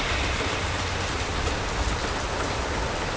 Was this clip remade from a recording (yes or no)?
no